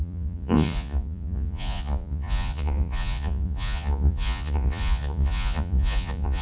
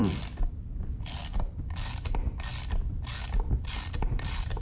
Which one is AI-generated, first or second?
first